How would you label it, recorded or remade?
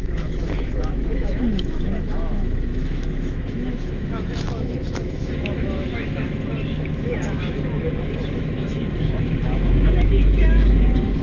remade